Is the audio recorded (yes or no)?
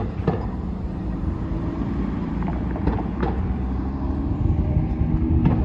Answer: no